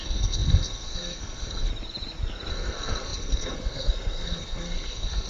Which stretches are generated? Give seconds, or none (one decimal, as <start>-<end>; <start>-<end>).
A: 0.0-1.7; 2.5-5.3